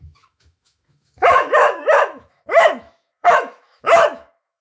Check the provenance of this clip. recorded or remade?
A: remade